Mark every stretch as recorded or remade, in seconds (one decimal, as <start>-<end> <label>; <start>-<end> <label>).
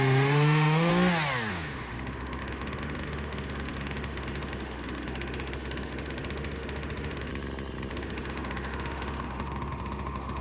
0.0-0.9 remade; 0.9-1.5 recorded; 1.5-7.3 remade; 7.3-7.9 recorded; 7.9-10.4 remade